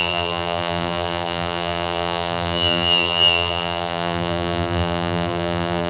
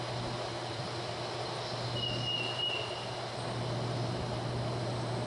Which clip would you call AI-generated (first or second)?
first